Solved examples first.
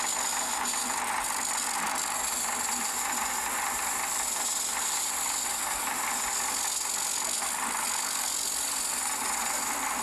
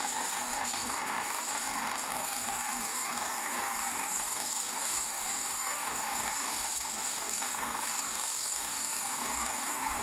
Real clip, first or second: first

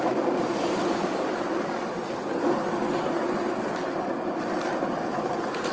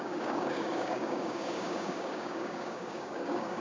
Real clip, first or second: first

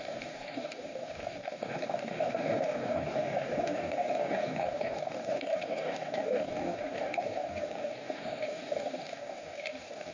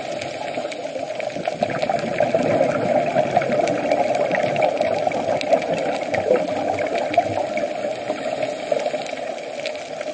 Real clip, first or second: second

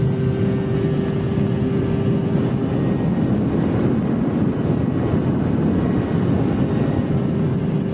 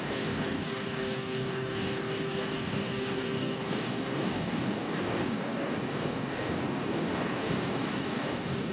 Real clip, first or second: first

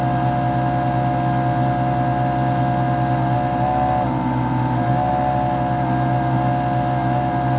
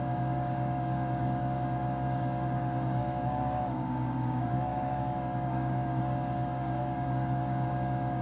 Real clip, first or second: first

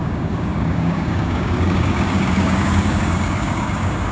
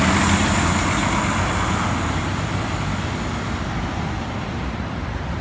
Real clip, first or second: second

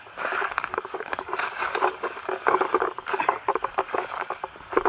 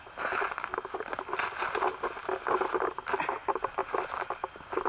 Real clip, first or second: second